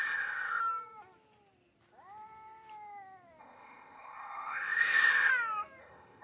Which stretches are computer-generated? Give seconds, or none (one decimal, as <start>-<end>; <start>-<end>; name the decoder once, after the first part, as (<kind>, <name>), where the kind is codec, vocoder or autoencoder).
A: 0.0-0.6 (codec, ZipCodec); 3.4-5.3; 5.8-6.2

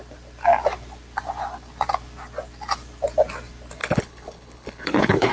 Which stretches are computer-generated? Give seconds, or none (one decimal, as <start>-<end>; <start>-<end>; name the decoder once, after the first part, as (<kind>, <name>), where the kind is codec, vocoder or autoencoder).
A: 3.8-5.3 (codec, HILCodec)

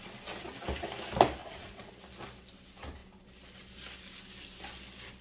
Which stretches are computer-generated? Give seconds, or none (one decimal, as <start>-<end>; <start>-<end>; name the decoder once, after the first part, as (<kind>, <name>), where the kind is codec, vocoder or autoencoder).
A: 1.4-1.9 (vocoder, Vocos)

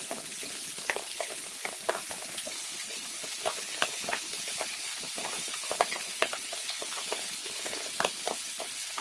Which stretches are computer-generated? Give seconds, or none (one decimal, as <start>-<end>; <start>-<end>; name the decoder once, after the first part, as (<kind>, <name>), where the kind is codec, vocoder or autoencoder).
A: 0.0-1.6 (codec, HILCodec); 2.2-9.0

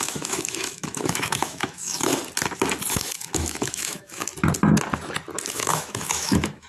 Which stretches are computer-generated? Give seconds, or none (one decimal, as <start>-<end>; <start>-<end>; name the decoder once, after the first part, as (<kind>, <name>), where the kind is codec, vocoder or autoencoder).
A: 0.0-2.1 (autoencoder, DAC-VAE); 2.9-4.3; 5.5-6.7